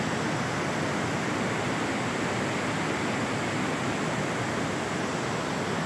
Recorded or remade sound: recorded